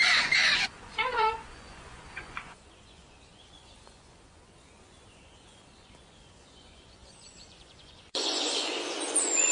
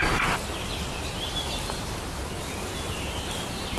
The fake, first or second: first